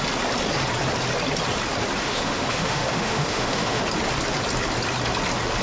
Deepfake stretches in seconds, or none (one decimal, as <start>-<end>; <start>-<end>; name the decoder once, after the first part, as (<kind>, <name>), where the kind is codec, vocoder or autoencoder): 2.0-3.8 (autoencoder, DAC-VAE)